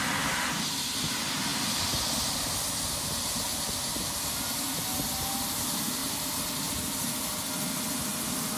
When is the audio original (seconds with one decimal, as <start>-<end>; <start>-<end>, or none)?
0.0-8.6